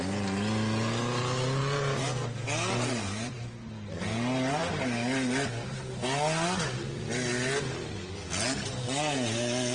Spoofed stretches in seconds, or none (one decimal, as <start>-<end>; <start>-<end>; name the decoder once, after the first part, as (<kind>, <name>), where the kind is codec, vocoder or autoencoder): none

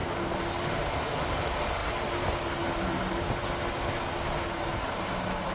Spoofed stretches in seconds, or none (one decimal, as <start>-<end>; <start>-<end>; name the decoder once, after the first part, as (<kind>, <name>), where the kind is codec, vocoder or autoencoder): none

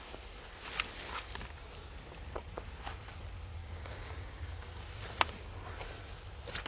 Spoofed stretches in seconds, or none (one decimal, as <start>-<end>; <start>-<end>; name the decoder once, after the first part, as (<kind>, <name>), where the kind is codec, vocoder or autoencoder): 3.6-4.8 (codec, DAC)

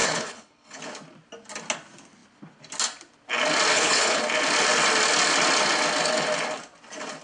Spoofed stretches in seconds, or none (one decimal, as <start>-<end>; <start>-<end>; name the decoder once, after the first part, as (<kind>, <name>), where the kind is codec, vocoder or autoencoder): 0.0-0.8 (codec, HILCodec); 3.7-4.2

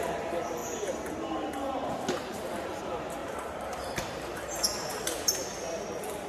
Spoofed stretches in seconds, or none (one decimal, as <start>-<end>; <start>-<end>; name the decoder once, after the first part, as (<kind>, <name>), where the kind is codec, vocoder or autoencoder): 3.2-5.0 (vocoder, BigVGAN v2)

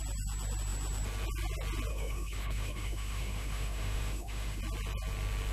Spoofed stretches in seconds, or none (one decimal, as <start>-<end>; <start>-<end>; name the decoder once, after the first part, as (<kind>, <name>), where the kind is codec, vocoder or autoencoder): 1.9-4.6 (autoencoder, DAC-VAE)